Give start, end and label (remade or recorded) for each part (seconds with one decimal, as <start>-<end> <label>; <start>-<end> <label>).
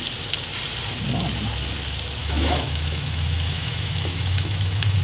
0.0-2.2 recorded; 2.2-5.0 remade